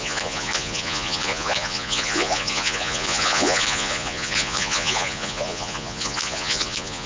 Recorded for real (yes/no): no